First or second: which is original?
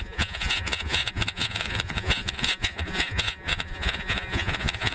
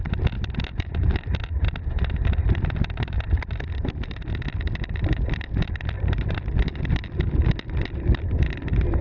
second